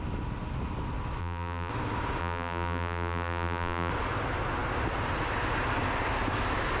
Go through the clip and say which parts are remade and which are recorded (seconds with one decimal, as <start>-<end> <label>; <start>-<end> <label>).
0.0-1.2 recorded; 1.2-1.7 remade; 1.7-2.2 recorded; 2.2-3.9 remade; 3.9-6.8 recorded